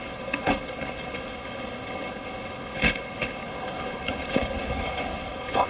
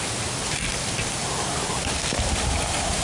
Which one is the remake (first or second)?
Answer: first